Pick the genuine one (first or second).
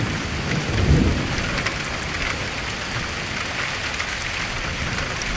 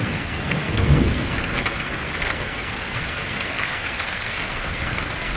first